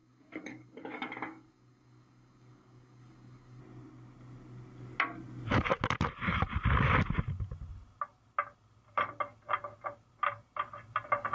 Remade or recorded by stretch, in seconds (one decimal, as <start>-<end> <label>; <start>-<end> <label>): 0.0-3.6 remade; 3.6-11.3 recorded